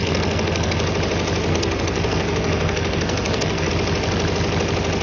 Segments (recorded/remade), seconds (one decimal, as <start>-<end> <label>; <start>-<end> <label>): 0.0-0.8 remade; 0.8-1.5 recorded; 1.5-3.7 remade; 3.7-5.0 recorded